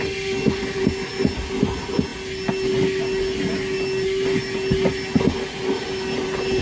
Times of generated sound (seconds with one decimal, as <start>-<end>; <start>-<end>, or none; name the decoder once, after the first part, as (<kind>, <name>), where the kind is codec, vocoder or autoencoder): none